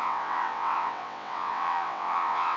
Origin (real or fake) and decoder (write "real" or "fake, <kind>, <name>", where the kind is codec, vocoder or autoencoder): fake, vocoder, WaveNeXt